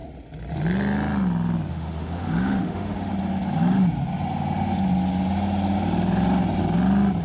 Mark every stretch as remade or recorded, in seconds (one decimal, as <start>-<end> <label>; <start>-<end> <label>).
0.0-1.7 recorded; 1.7-3.1 remade; 3.1-7.2 recorded